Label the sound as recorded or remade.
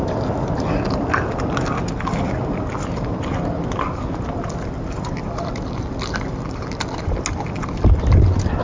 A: recorded